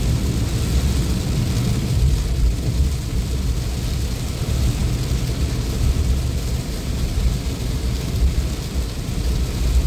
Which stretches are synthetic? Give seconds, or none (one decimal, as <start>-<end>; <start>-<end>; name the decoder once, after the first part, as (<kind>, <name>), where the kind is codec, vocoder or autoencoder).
none